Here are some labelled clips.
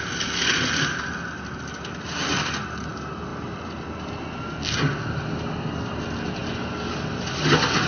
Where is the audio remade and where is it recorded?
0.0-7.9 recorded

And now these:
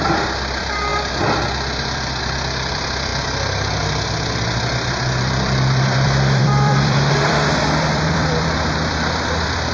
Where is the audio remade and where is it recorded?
0.0-3.1 remade; 3.1-5.2 recorded; 5.2-9.7 remade

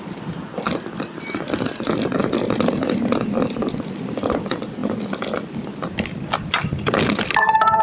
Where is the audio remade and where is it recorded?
0.0-7.8 remade

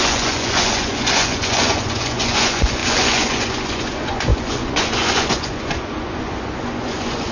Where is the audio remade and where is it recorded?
0.0-7.3 remade

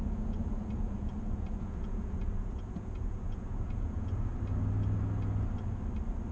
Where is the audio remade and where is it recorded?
0.0-4.3 remade; 4.3-6.3 recorded

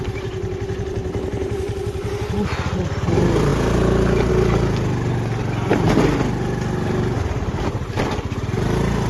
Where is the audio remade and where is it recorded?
0.0-9.1 recorded

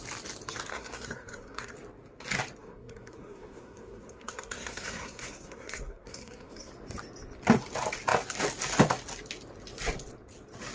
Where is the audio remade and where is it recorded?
0.0-0.7 recorded; 0.7-1.7 remade; 1.7-2.6 recorded; 2.6-6.7 remade; 6.7-10.7 recorded